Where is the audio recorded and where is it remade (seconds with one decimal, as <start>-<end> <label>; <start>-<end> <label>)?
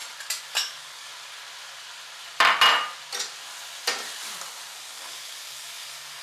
0.0-0.5 recorded; 0.5-1.1 remade; 1.1-4.8 recorded; 4.8-6.2 remade